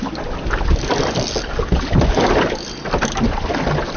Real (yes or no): yes